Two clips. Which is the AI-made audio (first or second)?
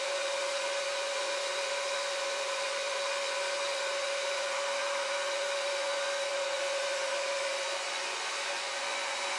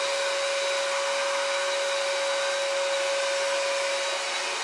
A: first